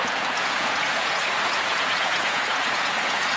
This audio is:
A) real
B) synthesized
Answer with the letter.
B